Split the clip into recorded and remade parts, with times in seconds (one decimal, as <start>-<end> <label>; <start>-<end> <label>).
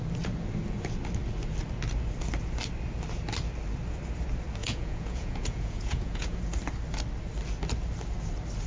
0.0-4.6 recorded; 4.6-6.4 remade; 6.4-8.7 recorded